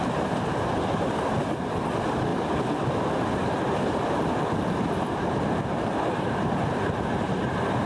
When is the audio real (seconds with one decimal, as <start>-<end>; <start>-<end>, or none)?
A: 0.0-7.9